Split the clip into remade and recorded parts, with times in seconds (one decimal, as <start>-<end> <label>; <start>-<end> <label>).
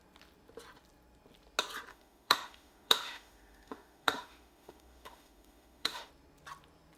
0.0-1.9 recorded; 1.9-6.1 remade; 6.1-7.0 recorded